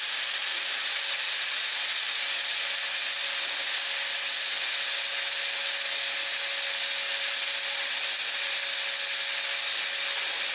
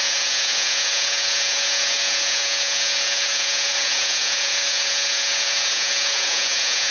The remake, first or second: second